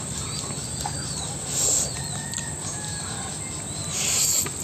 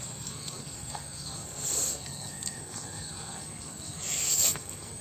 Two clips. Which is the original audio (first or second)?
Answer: first